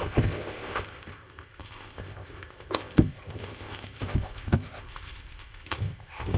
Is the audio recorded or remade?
remade